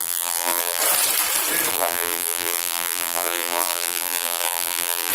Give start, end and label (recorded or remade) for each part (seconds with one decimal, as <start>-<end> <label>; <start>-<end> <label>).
0.0-0.8 remade; 0.8-1.7 recorded; 1.7-5.1 remade